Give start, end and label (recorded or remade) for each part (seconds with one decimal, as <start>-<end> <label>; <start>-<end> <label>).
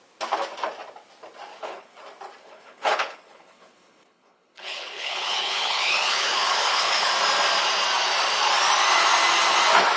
0.0-1.5 recorded; 1.5-2.0 remade; 2.0-2.4 recorded; 2.4-7.1 remade; 7.1-10.0 recorded